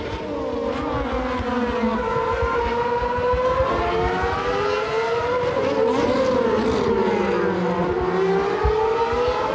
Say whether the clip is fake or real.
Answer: real